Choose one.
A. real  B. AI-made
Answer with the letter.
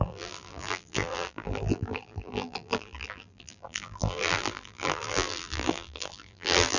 B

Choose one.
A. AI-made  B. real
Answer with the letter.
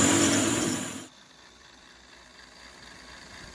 A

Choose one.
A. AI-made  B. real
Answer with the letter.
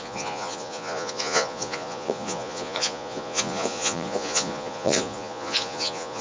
A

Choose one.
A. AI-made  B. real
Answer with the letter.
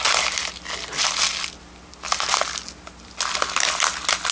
B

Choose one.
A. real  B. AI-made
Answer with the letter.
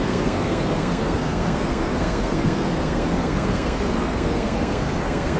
B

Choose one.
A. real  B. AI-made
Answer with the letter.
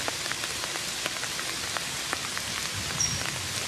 A